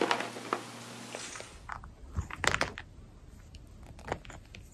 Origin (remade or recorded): recorded